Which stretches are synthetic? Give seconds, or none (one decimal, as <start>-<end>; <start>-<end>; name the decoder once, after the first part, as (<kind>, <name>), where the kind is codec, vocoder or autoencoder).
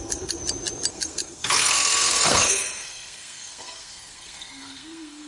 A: 0.0-0.4 (codec, SNAC); 0.9-5.3